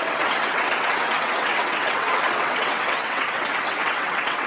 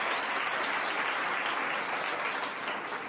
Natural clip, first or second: second